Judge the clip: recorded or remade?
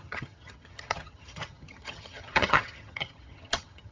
remade